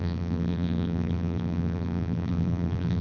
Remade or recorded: remade